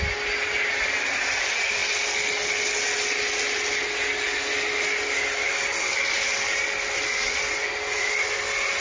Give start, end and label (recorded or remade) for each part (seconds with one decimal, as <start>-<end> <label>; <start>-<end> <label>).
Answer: 0.0-8.8 recorded